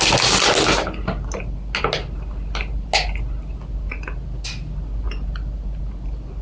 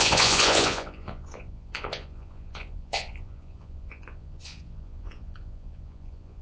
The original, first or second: first